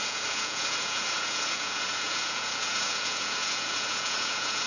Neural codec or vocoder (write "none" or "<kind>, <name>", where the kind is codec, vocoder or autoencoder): vocoder, Vocos